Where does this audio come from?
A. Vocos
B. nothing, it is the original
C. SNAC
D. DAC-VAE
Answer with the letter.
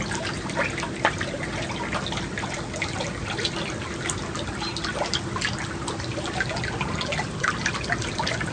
B